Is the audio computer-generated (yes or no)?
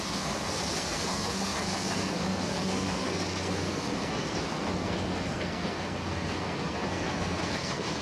yes